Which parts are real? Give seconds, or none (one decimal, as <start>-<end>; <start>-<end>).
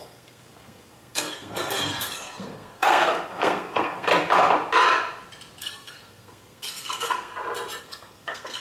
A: 4.1-5.6; 7.3-7.8